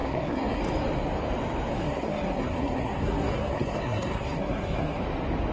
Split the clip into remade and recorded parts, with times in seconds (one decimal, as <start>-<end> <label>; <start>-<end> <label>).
0.0-0.6 remade; 0.6-1.7 recorded; 1.7-5.0 remade; 5.0-5.5 recorded